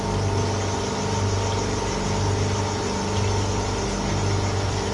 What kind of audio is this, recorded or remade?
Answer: recorded